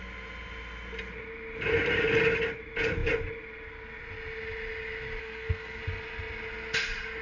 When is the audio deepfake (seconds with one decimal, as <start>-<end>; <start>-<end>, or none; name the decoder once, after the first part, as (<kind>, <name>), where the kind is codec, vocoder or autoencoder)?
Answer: 5.2-5.8 (codec, SNAC)